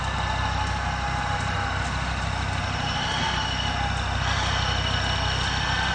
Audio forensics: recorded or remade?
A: recorded